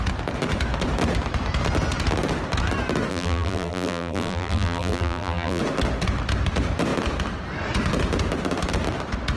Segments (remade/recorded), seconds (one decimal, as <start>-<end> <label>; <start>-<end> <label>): 0.0-3.1 recorded; 3.1-5.6 remade; 5.6-9.4 recorded